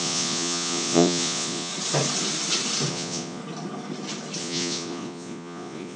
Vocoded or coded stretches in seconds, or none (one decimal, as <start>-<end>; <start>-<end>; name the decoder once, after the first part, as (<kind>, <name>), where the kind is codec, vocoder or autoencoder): 0.0-1.7 (vocoder, Vocos); 2.9-3.4; 4.4-6.0